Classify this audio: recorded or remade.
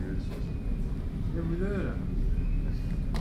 recorded